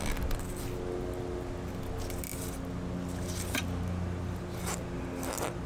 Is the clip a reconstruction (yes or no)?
no